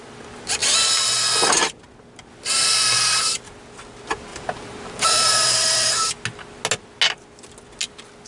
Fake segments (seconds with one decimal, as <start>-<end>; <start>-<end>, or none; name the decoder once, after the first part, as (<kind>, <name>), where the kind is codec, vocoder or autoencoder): 4.3-6.1 (vocoder, BigVGAN v2)